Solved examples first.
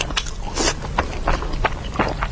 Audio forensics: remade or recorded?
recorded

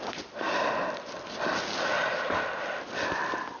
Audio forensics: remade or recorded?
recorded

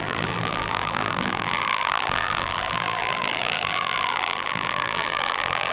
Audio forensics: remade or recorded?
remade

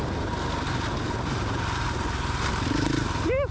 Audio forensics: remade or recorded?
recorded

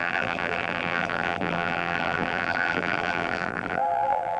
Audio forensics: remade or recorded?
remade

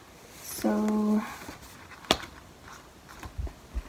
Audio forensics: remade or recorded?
recorded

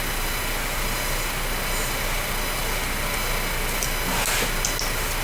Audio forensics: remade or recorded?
recorded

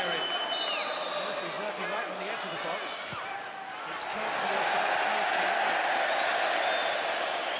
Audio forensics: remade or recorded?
recorded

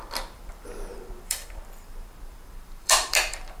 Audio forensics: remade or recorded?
remade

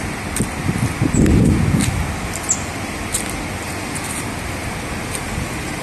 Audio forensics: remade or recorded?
recorded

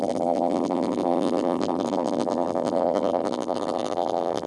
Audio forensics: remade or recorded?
remade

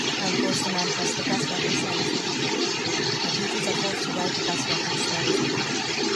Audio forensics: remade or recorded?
recorded